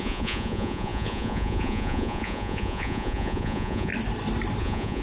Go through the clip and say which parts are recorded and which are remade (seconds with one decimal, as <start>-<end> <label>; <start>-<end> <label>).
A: 0.0-3.9 remade; 3.9-4.6 recorded; 4.6-5.0 remade

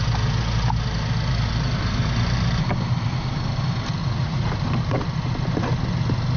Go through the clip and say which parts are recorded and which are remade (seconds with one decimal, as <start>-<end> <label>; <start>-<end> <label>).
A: 0.0-4.0 recorded; 4.0-4.5 remade; 4.5-6.4 recorded